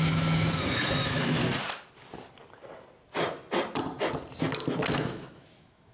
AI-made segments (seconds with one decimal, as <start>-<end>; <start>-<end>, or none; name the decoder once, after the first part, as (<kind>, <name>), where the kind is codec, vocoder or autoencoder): 0.0-1.4 (autoencoder, DAC-VAE); 4.9-5.9